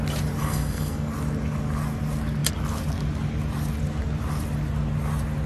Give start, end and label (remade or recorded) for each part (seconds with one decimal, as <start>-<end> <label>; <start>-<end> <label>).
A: 0.0-0.4 recorded; 0.4-1.1 remade; 1.1-5.5 recorded